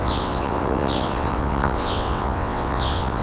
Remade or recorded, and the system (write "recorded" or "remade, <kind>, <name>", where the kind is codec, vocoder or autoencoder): remade, vocoder, WaveNeXt